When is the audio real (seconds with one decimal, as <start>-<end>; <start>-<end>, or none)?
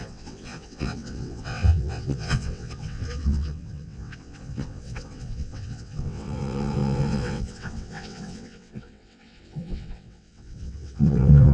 none